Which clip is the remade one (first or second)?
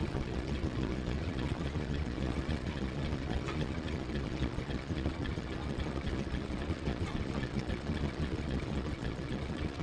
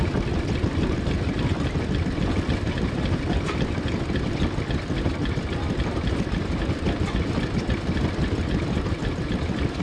first